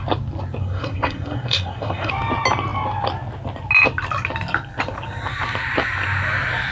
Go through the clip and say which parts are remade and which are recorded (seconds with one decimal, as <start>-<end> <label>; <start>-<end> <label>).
0.0-0.6 recorded; 0.6-2.1 remade; 2.1-6.7 recorded